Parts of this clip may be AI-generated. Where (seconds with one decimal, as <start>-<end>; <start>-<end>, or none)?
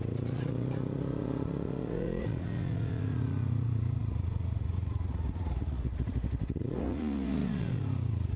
0.0-8.4